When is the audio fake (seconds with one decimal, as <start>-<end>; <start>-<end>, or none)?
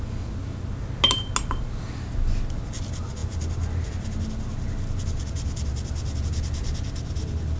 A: none